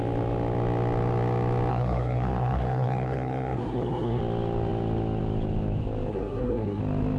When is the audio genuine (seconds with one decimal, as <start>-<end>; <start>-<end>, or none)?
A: 0.0-1.7; 4.2-6.1; 6.8-7.2